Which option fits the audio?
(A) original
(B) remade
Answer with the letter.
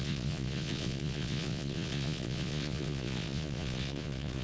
B